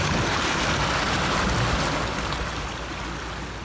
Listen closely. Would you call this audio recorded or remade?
recorded